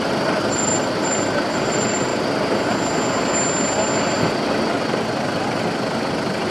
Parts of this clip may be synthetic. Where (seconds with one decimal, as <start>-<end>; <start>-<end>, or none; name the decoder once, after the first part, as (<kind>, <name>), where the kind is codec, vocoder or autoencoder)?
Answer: 0.0-0.7 (vocoder, BigVGAN v2); 1.7-2.1; 6.0-6.5